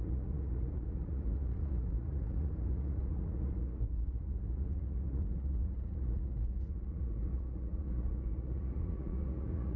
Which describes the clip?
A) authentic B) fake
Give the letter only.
B